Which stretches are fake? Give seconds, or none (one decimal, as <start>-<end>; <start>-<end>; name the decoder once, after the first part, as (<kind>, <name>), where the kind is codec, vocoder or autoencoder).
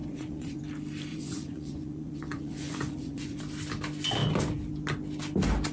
0.0-0.6 (vocoder, Vocos); 1.1-3.4